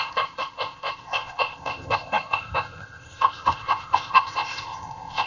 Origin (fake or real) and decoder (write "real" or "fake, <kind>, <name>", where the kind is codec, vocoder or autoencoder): fake, codec, ZipCodec